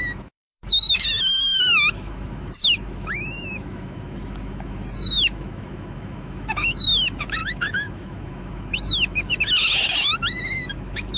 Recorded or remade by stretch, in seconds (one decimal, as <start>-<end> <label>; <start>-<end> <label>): 0.0-11.2 remade